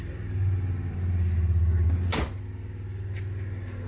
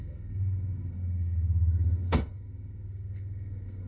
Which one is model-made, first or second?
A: second